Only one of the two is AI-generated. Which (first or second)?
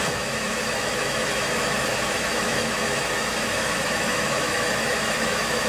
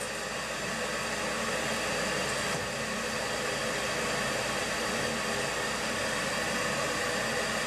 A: first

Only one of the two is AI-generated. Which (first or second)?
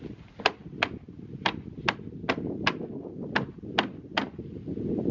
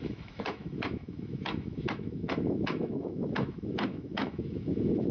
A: second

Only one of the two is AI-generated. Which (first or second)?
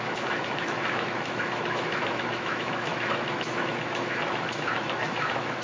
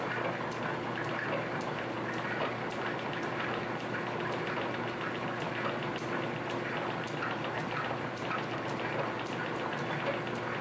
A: first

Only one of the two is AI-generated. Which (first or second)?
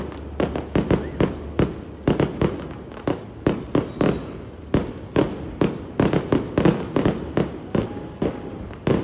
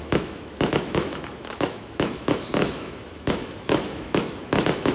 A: second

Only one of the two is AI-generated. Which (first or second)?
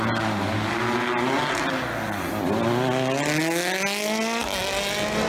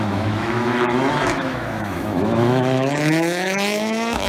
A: second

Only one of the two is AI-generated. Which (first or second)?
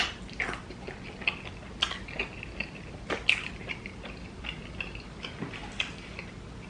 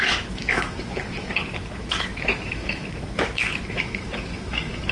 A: second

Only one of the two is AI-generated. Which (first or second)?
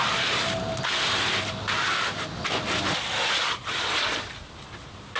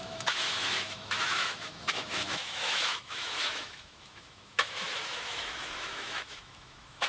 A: second